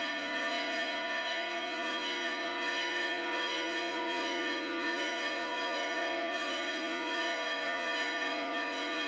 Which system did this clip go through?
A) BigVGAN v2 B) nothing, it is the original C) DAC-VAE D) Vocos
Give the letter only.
D